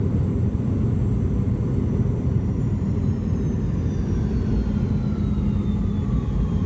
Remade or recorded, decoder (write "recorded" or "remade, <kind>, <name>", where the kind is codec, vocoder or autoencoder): recorded